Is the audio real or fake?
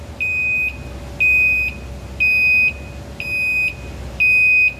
real